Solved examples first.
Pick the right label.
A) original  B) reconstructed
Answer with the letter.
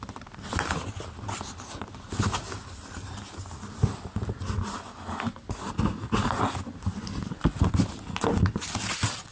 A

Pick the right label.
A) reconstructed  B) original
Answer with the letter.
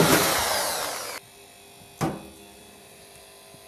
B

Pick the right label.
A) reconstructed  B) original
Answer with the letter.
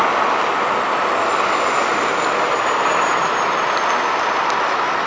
B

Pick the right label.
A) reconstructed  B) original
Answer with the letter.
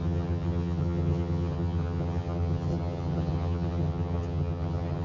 A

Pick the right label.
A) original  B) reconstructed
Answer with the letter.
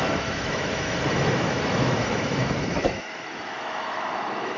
B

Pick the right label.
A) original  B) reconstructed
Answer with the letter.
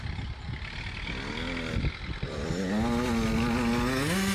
A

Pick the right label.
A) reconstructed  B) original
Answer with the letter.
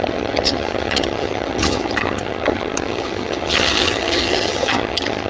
A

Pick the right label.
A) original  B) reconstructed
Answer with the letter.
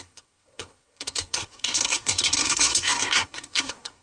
B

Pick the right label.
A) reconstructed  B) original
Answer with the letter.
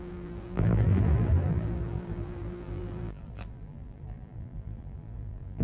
A